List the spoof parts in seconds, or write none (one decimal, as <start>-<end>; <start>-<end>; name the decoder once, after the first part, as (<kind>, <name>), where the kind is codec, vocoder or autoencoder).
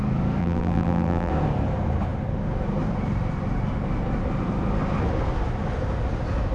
0.4-1.3 (vocoder, BigVGAN v2)